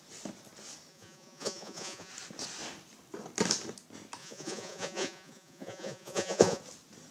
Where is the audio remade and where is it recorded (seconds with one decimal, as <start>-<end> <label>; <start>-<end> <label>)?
0.0-0.9 recorded; 0.9-2.1 remade; 2.1-4.2 recorded; 4.2-6.6 remade; 6.6-7.1 recorded